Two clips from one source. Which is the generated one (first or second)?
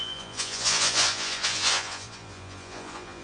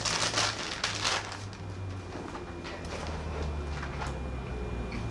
first